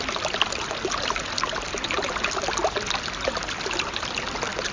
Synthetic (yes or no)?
no